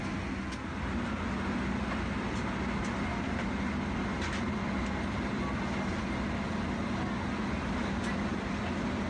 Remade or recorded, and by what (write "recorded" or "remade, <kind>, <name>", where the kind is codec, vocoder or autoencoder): recorded